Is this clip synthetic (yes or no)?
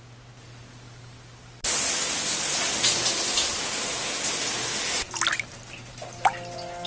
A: no